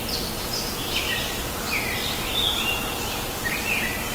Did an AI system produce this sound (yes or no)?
no